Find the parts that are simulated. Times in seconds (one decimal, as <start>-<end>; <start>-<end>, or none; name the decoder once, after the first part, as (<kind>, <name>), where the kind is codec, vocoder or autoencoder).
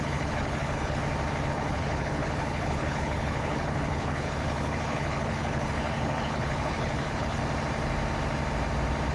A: 0.0-1.0 (codec, HILCodec); 1.5-7.4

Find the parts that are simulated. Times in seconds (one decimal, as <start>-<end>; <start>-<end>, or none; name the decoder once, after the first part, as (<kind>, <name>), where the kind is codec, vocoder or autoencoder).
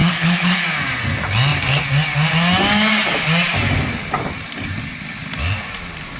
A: 0.0-0.6 (codec, HILCodec)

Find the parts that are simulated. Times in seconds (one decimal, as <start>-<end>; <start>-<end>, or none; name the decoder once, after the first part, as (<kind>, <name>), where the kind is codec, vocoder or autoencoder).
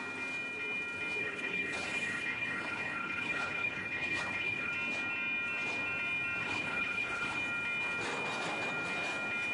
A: 1.2-4.7 (codec, HILCodec); 6.4-7.4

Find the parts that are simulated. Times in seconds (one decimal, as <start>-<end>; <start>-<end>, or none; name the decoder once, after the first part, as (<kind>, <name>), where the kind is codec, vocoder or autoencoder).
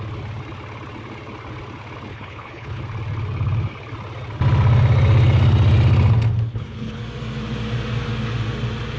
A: 2.1-2.8 (codec, HILCodec); 6.5-7.0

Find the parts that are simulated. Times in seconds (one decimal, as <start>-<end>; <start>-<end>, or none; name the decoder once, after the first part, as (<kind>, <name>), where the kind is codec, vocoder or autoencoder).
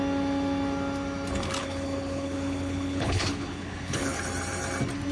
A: 1.6-4.2 (codec, HILCodec)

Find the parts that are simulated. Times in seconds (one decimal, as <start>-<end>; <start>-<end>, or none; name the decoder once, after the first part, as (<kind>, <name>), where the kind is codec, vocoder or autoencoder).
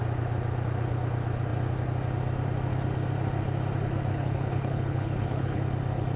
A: 4.1-5.6 (codec, HILCodec)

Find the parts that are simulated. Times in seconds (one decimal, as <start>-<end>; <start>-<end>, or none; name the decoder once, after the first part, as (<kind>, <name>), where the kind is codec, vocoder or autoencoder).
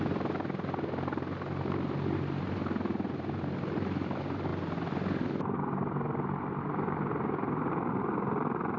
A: none